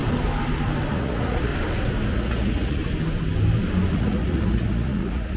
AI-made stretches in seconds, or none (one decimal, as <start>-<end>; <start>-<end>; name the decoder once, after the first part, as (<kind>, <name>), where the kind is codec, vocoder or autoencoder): 0.9-1.5 (vocoder, Vocos); 2.1-2.8; 3.9-5.4